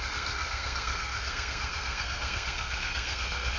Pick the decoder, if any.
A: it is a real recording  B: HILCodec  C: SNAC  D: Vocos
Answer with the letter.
C